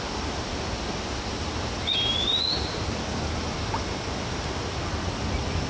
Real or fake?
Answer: real